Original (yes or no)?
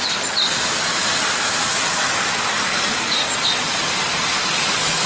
yes